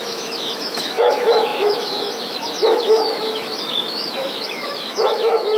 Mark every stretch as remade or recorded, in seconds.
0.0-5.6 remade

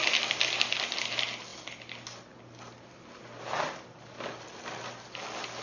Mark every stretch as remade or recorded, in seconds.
0.0-5.6 recorded

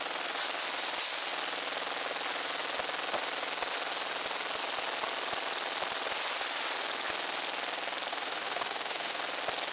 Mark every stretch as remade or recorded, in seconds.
0.0-8.1 recorded; 8.1-9.2 remade; 9.2-9.7 recorded

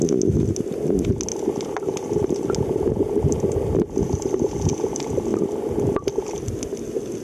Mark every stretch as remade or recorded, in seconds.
0.0-7.2 recorded

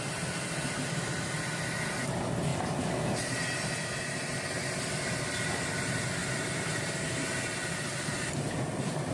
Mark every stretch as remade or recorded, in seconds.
0.0-9.1 recorded

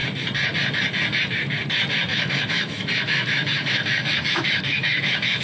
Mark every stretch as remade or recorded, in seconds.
0.0-2.1 recorded; 2.1-5.4 remade

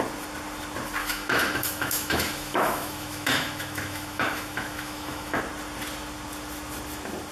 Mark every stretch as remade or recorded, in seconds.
0.0-1.0 recorded; 1.0-5.4 remade; 5.4-7.3 recorded